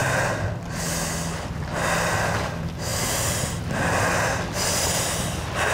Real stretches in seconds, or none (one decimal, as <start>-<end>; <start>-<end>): 0.0-5.7

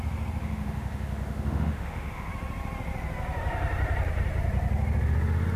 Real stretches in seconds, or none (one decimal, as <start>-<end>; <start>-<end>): 0.0-0.4; 2.3-5.6

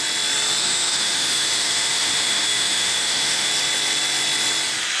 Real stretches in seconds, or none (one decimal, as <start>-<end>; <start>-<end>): 0.0-0.6; 3.5-5.0